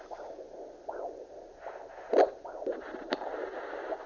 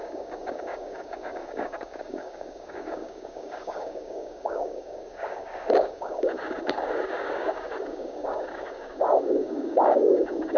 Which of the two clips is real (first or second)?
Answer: first